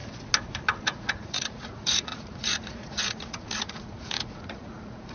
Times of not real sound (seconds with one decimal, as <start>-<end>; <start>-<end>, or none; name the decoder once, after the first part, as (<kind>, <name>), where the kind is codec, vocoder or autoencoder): 0.8-5.1 (vocoder, Vocos)